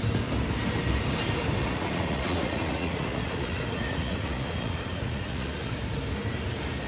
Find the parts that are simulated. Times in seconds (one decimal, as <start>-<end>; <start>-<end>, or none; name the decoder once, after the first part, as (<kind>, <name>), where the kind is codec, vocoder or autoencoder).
1.6-5.7 (vocoder, Vocos)